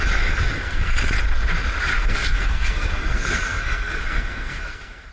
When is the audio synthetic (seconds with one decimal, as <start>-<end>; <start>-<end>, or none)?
0.4-0.9; 1.9-5.1